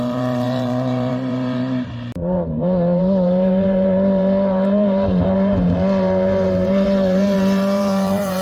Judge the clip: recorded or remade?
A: remade